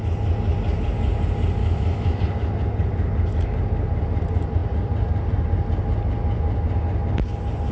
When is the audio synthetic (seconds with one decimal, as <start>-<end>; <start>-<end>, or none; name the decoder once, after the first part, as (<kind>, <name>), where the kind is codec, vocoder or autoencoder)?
1.6-2.2 (autoencoder, DAC-VAE)